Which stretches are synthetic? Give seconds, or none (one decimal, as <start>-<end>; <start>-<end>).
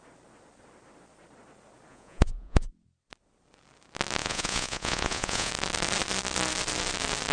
1.9-2.7; 4.2-5.5